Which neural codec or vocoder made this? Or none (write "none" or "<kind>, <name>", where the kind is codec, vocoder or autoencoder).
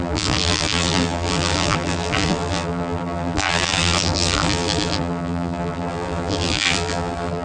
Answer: vocoder, BigVGAN v2